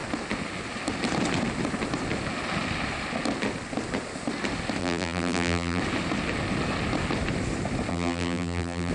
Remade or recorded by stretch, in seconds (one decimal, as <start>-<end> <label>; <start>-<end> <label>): 0.0-4.8 recorded; 4.8-5.8 remade; 5.8-7.9 recorded; 7.9-8.9 remade